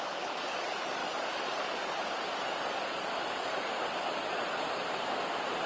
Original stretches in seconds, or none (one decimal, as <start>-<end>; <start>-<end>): 0.0-5.7